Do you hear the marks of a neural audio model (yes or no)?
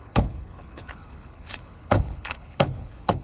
yes